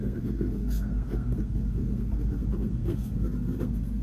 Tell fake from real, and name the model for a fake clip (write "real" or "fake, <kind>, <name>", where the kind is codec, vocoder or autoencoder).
fake, codec, SNAC